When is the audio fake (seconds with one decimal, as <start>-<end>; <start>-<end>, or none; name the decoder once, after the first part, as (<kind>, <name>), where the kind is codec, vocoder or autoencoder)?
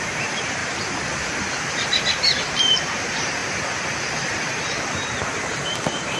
0.0-0.6 (vocoder, BigVGAN v2); 1.7-3.4; 4.0-6.2